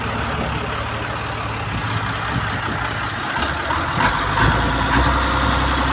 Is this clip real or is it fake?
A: real